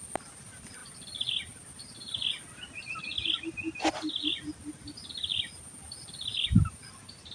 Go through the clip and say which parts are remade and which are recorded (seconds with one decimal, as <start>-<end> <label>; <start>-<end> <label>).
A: 0.0-7.3 recorded